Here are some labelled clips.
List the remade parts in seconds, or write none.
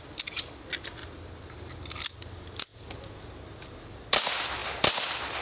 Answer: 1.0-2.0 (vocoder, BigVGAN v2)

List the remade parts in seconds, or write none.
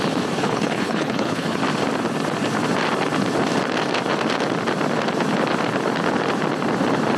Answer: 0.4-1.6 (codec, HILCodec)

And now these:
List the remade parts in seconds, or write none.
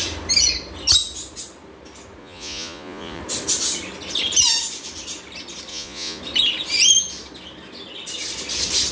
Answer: 2.2-3.2 (vocoder, Vocos); 5.7-6.2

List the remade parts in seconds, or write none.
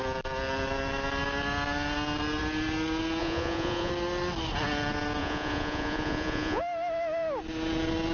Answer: 3.2-3.9 (vocoder, Vocos); 5.2-6.6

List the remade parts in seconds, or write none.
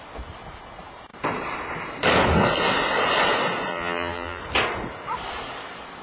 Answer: 3.7-4.4 (vocoder, BigVGAN v2)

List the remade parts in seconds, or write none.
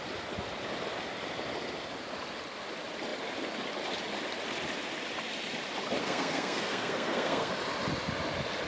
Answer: 6.0-7.5 (codec, SNAC)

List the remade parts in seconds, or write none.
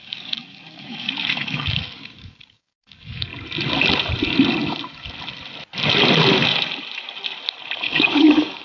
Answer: 0.0-3.3 (codec, DAC); 7.8-8.6